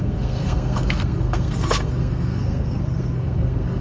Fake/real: fake